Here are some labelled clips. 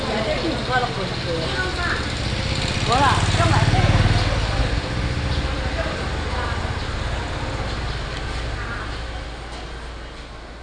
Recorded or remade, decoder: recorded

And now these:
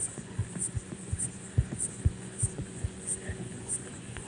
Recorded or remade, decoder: remade, vocoder, Vocos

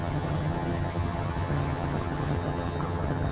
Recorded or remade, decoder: remade, vocoder, HiFi-GAN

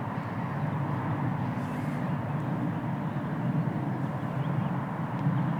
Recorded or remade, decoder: recorded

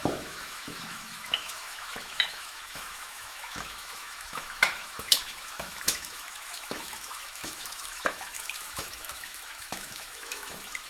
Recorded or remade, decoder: remade, autoencoder, DAC-VAE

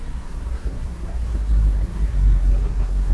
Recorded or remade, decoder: remade, codec, SNAC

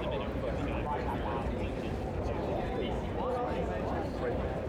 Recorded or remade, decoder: recorded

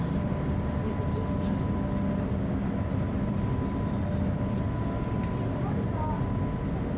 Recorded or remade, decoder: recorded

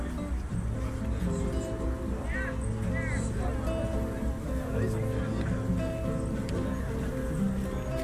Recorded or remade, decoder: recorded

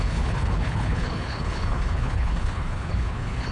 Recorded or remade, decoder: remade, codec, HILCodec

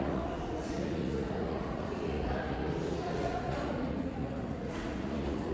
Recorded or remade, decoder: remade, vocoder, Vocos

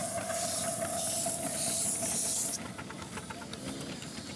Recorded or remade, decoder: recorded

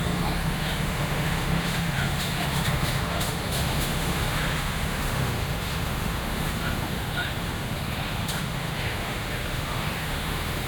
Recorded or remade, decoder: remade, autoencoder, DAC-VAE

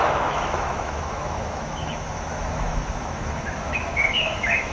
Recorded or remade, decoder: remade, autoencoder, DAC-VAE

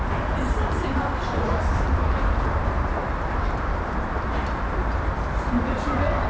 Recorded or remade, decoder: remade, vocoder, BigVGAN v2